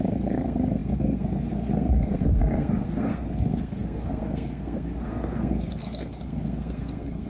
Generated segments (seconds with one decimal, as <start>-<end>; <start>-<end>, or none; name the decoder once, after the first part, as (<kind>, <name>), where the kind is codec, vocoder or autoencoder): 0.0-7.3 (codec, SNAC)